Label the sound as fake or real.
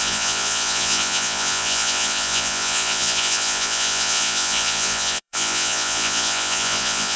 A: fake